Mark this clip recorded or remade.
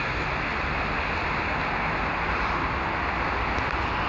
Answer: recorded